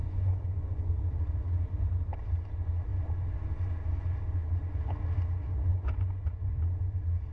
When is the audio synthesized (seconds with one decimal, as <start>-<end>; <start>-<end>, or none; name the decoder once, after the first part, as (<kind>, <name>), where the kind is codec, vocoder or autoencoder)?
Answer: 0.0-0.9 (vocoder, Vocos); 5.7-6.4

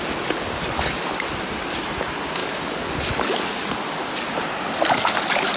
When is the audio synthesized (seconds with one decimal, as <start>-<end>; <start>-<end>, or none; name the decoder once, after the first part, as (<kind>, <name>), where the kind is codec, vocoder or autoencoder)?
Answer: 2.4-3.5 (codec, DAC)

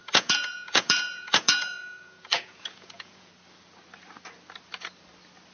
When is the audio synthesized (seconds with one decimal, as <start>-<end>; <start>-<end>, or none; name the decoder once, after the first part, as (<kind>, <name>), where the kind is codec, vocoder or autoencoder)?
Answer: 0.0-3.3 (vocoder, Vocos)

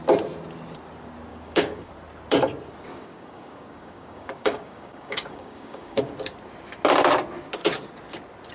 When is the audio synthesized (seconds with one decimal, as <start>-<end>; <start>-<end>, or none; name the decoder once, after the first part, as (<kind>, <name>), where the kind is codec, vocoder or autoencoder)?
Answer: 1.3-1.9 (codec, DAC); 2.9-6.0

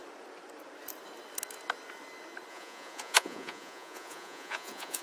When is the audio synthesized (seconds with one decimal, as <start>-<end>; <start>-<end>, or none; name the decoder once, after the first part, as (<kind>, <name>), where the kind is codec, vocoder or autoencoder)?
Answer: 2.5-5.0 (vocoder, Vocos)